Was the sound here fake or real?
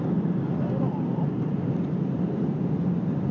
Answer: real